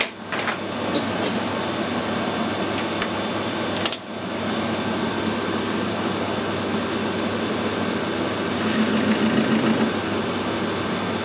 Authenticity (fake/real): real